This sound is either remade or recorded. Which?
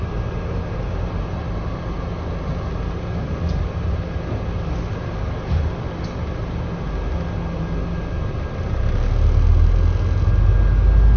recorded